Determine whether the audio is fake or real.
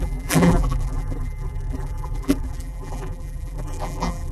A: fake